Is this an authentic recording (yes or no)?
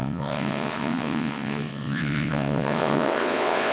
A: no